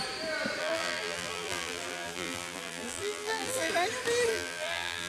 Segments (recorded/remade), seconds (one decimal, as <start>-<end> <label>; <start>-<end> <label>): 0.0-0.6 recorded; 0.6-3.7 remade; 3.7-4.3 recorded; 4.3-5.1 remade